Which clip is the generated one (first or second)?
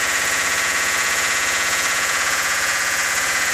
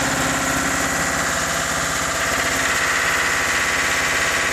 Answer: first